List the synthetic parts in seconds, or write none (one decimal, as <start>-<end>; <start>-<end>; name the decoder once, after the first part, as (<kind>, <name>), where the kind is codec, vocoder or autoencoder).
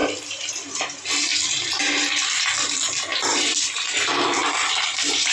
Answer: 0.0-0.5 (vocoder, BigVGAN v2); 1.3-1.8; 3.1-3.9; 4.4-5.3